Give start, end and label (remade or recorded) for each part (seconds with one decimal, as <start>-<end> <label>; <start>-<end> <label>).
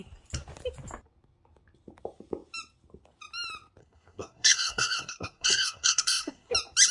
0.0-3.8 recorded; 3.8-6.5 remade; 6.5-6.9 recorded